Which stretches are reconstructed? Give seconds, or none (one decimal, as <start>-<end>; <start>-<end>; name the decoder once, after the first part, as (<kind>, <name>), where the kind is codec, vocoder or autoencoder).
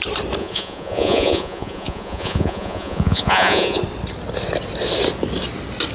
0.4-3.8 (vocoder, Vocos)